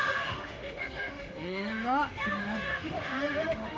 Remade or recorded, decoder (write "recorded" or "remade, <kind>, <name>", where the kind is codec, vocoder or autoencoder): remade, autoencoder, DAC-VAE